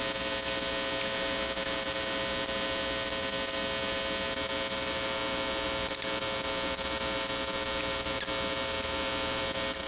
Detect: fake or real real